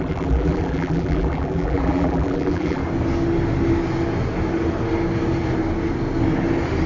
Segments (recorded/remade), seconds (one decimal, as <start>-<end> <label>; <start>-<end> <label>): 0.0-2.8 remade; 2.8-6.9 recorded